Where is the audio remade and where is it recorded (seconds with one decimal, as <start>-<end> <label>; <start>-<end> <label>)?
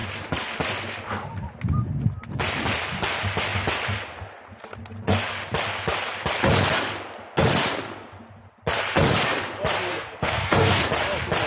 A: 0.0-9.9 recorded; 9.9-10.8 remade; 10.8-11.5 recorded